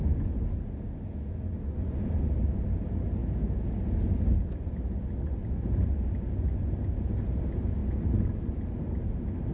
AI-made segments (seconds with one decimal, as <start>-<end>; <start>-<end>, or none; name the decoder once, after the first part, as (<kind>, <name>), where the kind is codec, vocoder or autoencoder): none

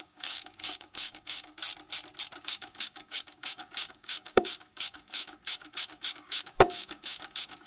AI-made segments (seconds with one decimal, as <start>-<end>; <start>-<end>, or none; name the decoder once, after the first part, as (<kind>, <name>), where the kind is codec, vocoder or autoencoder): 0.0-1.6 (codec, DAC); 2.4-7.7